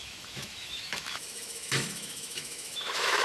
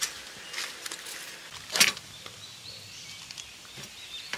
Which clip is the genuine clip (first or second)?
second